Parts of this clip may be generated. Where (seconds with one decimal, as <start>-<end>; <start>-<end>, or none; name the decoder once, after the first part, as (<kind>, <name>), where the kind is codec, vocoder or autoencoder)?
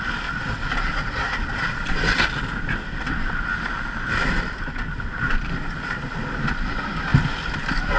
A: none